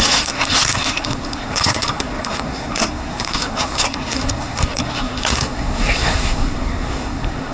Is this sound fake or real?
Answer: fake